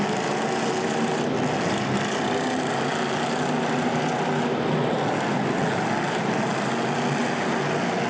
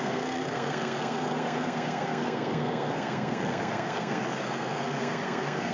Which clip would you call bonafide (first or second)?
first